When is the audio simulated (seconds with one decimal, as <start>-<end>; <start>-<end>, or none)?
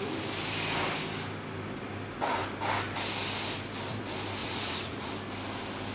4.4-5.1